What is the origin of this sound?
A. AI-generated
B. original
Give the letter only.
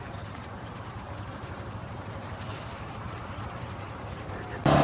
A